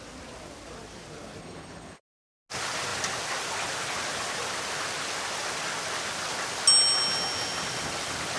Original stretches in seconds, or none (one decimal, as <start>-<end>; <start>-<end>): 0.0-1.4; 2.0-8.4